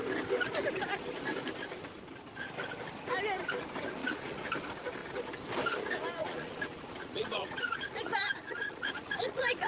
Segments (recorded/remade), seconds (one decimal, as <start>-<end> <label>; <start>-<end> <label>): 0.0-4.0 recorded; 4.0-4.5 remade; 4.5-6.2 recorded; 6.2-9.7 remade